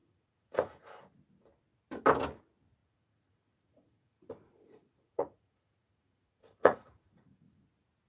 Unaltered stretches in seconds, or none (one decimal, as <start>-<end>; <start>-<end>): 0.8-2.8; 7.6-8.1